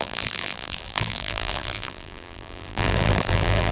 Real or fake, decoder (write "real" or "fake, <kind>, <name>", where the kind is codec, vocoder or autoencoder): fake, vocoder, BigVGAN v2